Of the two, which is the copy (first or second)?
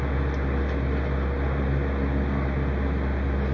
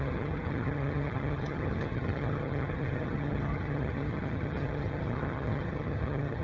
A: second